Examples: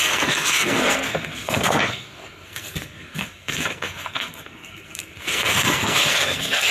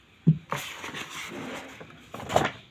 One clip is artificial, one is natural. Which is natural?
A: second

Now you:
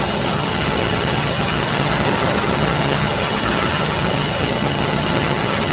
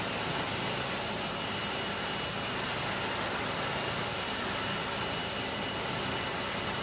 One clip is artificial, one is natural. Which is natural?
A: second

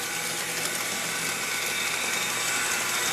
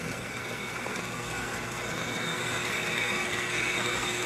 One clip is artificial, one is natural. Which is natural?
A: first